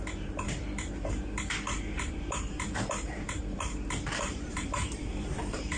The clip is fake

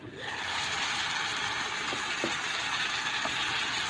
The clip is real